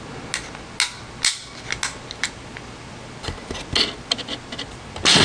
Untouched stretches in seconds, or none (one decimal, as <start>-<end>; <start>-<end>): 0.0-5.2